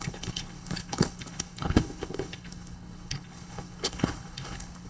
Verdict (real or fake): fake